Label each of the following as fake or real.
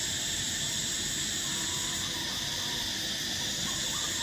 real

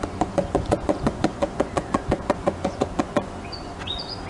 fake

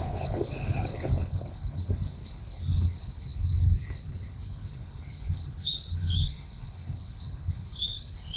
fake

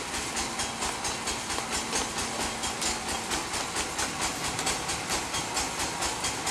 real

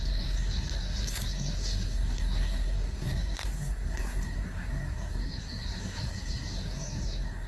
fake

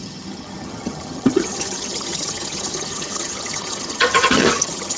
fake